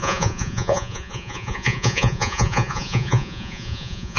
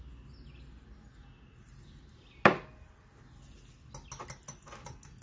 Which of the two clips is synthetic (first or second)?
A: first